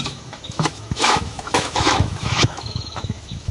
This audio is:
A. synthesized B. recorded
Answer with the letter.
A